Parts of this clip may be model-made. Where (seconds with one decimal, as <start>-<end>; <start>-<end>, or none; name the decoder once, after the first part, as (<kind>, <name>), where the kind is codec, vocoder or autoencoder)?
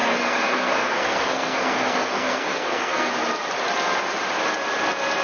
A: 0.0-3.1 (codec, SNAC)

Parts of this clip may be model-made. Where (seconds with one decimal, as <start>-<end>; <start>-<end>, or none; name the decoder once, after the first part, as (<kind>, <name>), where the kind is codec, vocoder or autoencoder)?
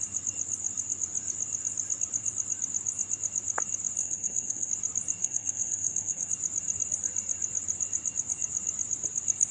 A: 4.0-4.7 (codec, SNAC); 5.2-6.3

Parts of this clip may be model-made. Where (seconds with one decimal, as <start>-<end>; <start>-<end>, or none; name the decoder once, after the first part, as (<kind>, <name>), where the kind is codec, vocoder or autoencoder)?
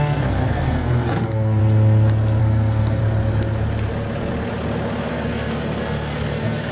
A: 0.0-1.6 (codec, SNAC); 2.4-3.0; 5.1-6.7